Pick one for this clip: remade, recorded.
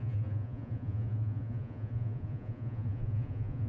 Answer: remade